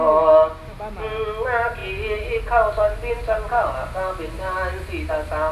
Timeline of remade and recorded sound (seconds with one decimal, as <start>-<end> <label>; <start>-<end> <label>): 0.0-5.5 recorded